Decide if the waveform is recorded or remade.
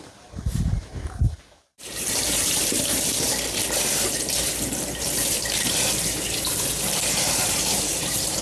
remade